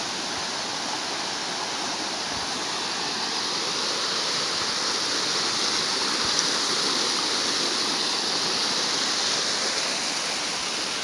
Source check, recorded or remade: recorded